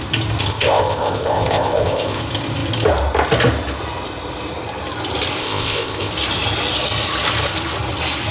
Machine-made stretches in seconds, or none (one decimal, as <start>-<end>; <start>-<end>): 0.4-2.2; 5.4-6.1